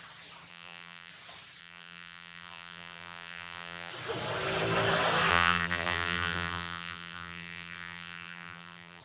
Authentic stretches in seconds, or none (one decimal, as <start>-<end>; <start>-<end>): 0.0-0.5; 1.1-1.6; 3.9-5.3